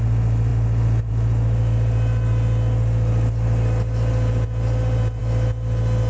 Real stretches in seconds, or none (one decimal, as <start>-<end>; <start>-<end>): 0.0-6.1